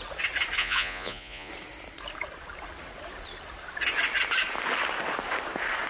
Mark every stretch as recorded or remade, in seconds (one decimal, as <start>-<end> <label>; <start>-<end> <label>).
0.0-0.6 recorded; 0.6-1.5 remade; 1.5-5.9 recorded